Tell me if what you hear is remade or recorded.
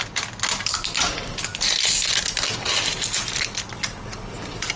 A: recorded